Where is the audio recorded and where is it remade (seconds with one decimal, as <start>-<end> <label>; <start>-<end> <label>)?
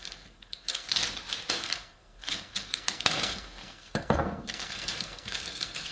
0.0-1.0 remade; 1.0-1.5 recorded; 1.5-5.9 remade